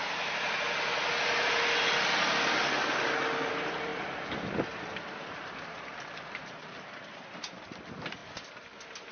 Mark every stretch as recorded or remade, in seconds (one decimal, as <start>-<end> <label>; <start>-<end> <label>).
0.0-0.9 remade; 0.9-3.5 recorded; 3.5-3.9 remade; 3.9-5.2 recorded; 5.2-8.2 remade; 8.2-9.1 recorded